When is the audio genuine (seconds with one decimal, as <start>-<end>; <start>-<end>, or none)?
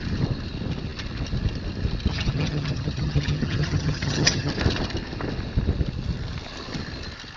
0.0-2.1; 4.5-7.4